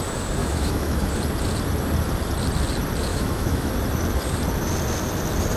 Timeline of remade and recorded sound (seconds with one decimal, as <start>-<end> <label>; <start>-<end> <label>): 0.0-0.4 recorded; 0.4-1.1 remade; 1.1-3.1 recorded; 3.1-3.7 remade; 3.7-5.6 recorded

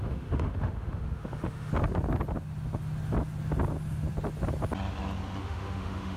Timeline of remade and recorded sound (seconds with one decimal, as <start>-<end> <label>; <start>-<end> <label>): 0.0-1.7 remade; 1.7-5.4 recorded; 5.4-6.2 remade